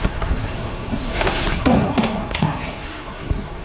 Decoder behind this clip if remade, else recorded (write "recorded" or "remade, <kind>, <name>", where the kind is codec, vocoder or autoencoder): remade, codec, SNAC